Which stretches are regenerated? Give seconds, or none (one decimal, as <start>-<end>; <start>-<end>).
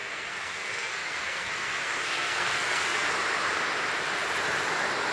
0.0-3.1